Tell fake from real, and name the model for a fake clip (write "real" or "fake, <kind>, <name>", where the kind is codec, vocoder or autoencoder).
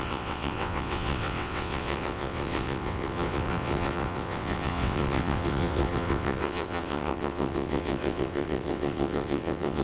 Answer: fake, vocoder, WaveNeXt